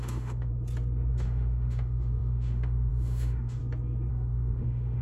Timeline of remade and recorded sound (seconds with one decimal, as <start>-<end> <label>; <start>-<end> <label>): 0.0-0.5 remade; 0.5-1.1 recorded; 1.1-3.6 remade; 3.6-4.1 recorded; 4.1-5.0 remade